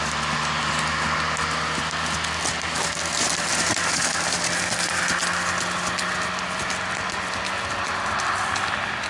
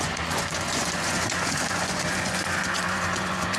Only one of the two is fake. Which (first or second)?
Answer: second